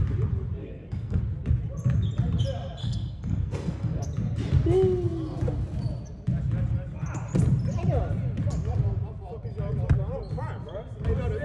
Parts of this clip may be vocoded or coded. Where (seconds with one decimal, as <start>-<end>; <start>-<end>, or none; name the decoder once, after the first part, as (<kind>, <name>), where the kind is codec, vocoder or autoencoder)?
0.6-1.2 (codec, SNAC); 2.8-4.0